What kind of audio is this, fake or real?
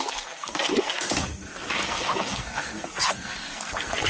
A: fake